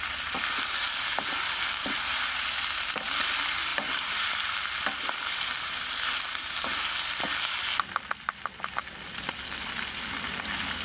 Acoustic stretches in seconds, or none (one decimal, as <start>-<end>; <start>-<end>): 0.0-10.8